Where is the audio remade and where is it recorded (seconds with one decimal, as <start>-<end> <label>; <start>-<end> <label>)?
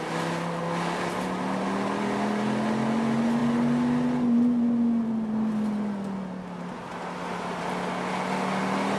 0.0-9.0 recorded